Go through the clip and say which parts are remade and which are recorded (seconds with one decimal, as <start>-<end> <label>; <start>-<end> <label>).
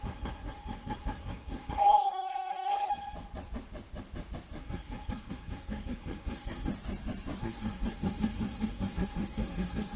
0.0-2.9 remade; 2.9-4.6 recorded; 4.6-6.7 remade; 6.7-7.4 recorded; 7.4-10.0 remade